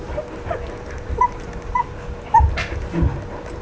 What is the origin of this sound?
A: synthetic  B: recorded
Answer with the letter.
B